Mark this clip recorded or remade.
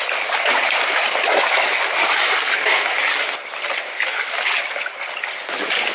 recorded